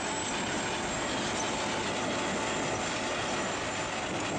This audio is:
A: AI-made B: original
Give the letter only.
B